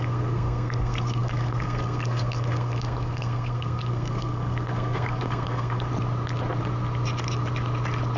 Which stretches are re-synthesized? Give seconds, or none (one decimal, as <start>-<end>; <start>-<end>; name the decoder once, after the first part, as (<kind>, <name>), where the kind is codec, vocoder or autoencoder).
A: 0.0-5.9 (codec, SNAC)

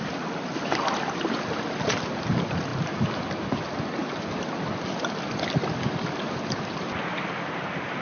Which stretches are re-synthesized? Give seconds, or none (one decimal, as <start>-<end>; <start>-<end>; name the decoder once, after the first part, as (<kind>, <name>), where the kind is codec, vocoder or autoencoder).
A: none

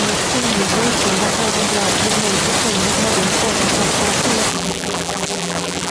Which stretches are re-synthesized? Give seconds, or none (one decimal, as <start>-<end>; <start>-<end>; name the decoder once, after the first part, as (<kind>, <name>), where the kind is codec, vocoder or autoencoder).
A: 4.5-5.9 (vocoder, BigVGAN v2)